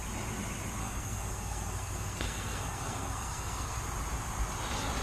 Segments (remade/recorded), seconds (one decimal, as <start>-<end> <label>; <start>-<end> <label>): 0.0-0.8 recorded; 0.8-3.8 remade; 3.8-5.0 recorded